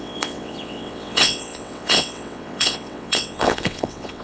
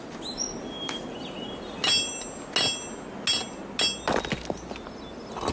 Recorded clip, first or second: second